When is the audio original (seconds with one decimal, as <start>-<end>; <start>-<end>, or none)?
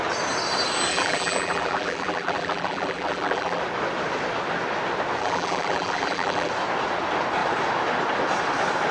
0.0-0.9; 3.6-5.2; 6.5-8.9